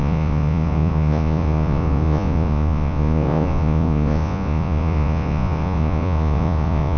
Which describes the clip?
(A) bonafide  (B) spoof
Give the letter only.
B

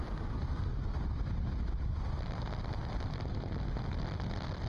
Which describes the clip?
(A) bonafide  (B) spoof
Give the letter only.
A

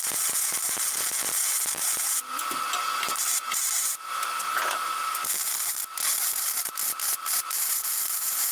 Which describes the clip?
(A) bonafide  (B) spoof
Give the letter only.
A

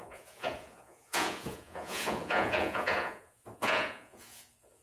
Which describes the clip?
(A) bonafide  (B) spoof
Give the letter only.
B